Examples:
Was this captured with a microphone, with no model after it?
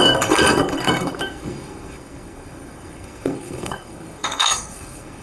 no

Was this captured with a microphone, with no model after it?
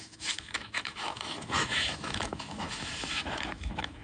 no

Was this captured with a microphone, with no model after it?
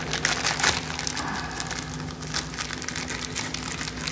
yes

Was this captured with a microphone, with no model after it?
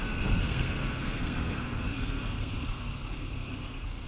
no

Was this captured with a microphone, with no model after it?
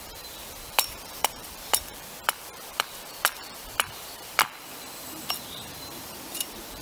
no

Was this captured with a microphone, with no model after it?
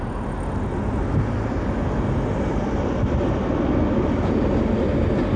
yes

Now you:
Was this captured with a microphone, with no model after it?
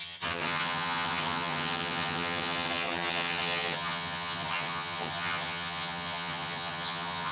no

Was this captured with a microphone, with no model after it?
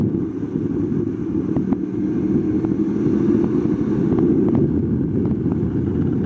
yes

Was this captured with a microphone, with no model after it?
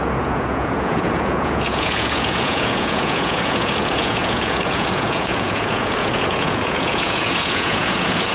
no